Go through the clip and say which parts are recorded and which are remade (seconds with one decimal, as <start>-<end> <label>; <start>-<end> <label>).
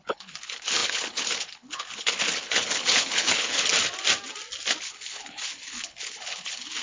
0.0-3.7 remade; 3.7-4.8 recorded; 4.8-6.8 remade